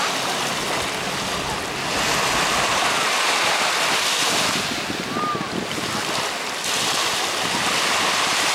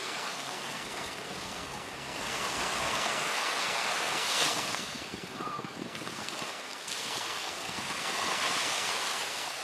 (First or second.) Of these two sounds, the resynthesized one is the second